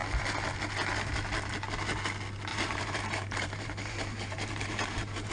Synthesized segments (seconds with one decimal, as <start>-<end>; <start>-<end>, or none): 2.5-5.3